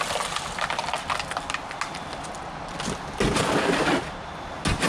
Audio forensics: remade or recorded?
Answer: recorded